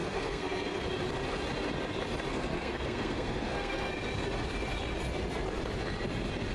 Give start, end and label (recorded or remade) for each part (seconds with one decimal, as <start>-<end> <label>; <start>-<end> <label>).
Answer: 0.0-0.8 remade; 0.8-2.3 recorded; 2.3-3.9 remade; 3.9-6.5 recorded